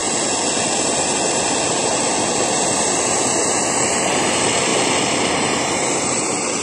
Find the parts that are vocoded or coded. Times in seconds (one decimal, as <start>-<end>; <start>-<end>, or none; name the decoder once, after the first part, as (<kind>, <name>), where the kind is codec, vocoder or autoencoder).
4.0-4.7 (vocoder, BigVGAN v2); 5.3-6.6